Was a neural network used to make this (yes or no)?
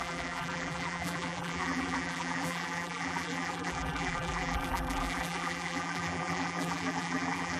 yes